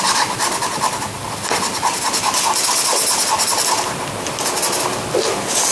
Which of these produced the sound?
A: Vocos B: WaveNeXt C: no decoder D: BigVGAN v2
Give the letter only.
C